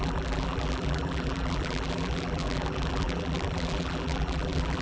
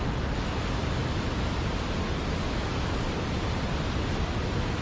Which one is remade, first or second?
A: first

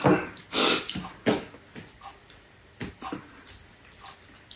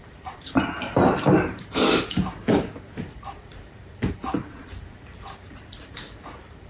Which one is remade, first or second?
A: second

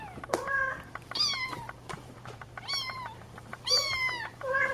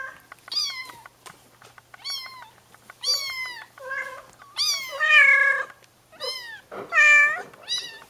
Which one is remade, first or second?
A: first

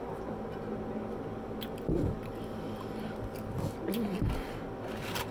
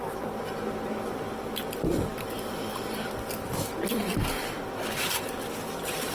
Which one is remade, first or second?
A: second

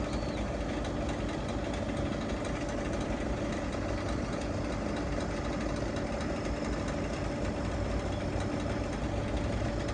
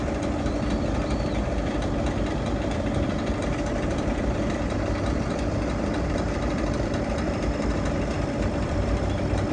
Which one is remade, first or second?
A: second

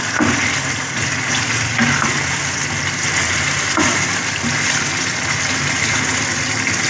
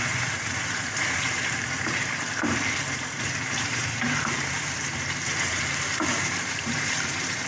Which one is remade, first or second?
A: second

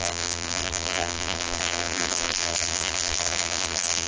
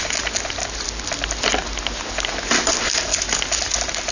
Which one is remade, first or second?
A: first